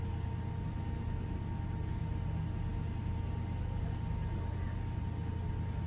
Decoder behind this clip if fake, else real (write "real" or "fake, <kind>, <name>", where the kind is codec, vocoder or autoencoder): real